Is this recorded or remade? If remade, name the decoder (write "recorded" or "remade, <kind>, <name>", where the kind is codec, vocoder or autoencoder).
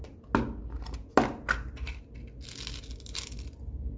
recorded